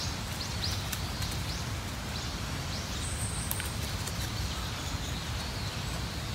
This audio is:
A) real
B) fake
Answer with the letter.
A